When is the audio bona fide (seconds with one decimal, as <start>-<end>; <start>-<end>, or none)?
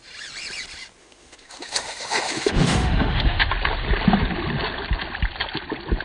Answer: 0.0-1.0; 3.5-6.0